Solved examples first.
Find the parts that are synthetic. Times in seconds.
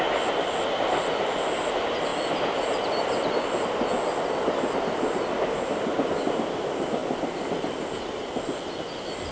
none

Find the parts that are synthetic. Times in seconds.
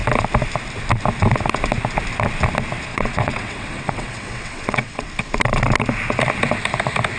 2.9-5.1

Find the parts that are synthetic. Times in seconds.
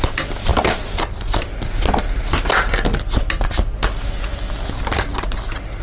none